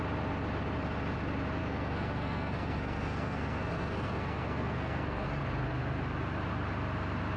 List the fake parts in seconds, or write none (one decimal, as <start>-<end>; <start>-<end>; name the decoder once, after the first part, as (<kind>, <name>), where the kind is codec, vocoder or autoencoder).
1.6-5.4 (codec, SNAC)